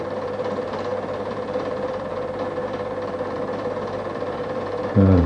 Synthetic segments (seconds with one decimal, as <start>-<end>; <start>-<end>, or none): 0.0-5.3